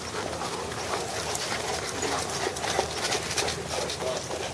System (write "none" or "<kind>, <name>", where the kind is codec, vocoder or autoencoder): none